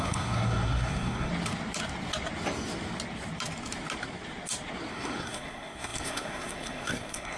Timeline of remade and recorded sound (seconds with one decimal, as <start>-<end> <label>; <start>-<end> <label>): 0.0-1.3 remade; 1.3-4.9 recorded; 4.9-7.4 remade

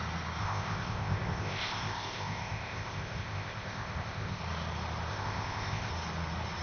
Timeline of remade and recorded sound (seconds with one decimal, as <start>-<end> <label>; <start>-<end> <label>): 0.0-0.4 recorded; 0.4-4.4 remade; 4.4-5.1 recorded; 5.1-5.9 remade; 5.9-6.6 recorded

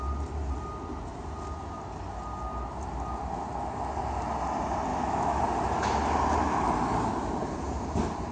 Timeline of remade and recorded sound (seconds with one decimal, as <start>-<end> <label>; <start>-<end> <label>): 0.0-4.9 recorded; 4.9-5.4 remade; 5.4-8.3 recorded

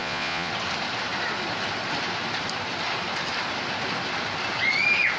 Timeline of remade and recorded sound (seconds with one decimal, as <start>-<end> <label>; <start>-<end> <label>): 0.0-0.5 remade; 0.5-5.2 recorded